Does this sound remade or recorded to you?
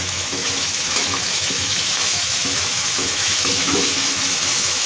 remade